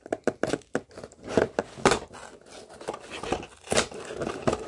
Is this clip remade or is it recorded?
recorded